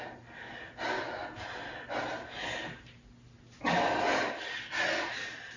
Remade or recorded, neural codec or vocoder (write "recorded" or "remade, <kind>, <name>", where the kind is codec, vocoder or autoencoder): recorded